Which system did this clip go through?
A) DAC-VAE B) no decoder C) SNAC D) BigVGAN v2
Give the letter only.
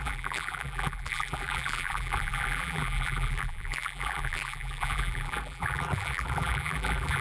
D